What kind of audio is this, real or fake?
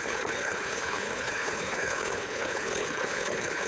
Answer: fake